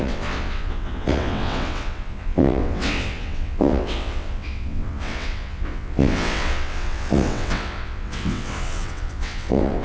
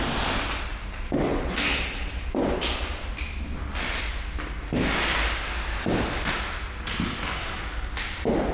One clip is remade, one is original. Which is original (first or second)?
second